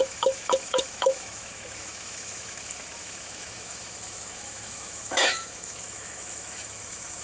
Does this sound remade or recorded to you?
remade